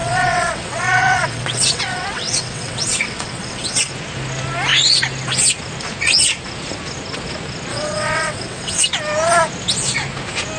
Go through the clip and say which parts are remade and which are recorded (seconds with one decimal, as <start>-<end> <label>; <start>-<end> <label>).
0.0-3.9 remade; 3.9-7.7 recorded; 7.7-8.8 remade; 8.8-10.6 recorded